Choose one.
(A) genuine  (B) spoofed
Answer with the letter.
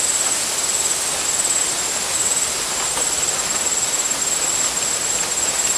A